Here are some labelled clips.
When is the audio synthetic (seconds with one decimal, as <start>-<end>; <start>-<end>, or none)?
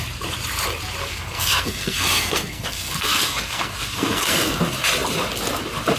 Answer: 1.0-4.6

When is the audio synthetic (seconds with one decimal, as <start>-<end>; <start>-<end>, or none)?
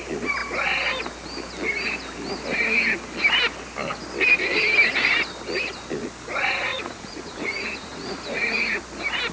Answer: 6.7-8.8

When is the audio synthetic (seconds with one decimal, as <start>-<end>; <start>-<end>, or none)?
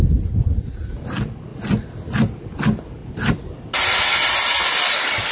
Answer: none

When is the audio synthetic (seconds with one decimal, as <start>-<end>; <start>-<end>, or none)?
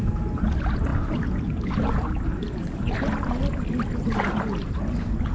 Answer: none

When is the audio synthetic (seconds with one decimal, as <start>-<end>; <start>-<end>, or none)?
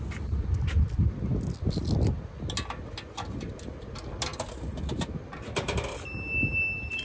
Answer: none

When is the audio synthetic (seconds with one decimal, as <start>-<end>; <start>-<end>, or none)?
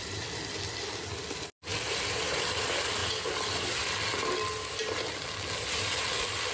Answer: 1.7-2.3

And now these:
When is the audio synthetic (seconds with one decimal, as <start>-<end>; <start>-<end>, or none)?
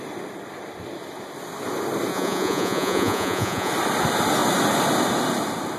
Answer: 2.1-3.7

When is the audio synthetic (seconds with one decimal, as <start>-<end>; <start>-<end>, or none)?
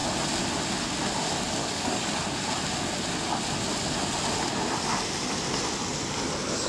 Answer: 1.6-2.1